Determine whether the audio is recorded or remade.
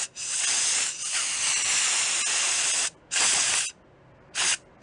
recorded